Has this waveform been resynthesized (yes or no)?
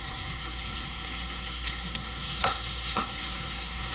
yes